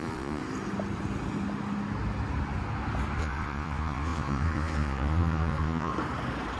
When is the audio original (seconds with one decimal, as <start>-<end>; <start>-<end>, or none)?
0.4-3.2; 5.9-6.6